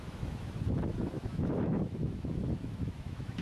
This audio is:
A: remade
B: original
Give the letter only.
A